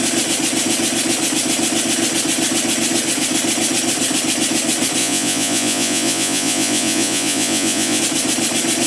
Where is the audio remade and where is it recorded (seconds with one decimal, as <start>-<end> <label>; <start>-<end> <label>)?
0.0-5.0 recorded; 5.0-8.0 remade; 8.0-8.9 recorded